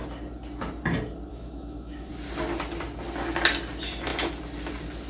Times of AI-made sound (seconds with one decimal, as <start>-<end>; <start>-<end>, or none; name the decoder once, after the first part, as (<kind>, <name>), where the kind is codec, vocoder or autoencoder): 1.3-2.1 (autoencoder, DAC-VAE)